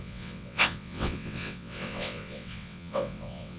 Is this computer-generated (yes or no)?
yes